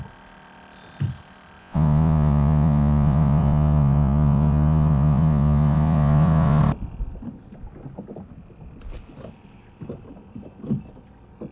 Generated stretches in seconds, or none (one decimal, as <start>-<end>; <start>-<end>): 1.6-6.6